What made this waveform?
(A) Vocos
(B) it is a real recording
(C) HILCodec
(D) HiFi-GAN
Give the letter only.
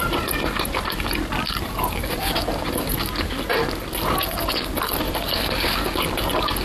B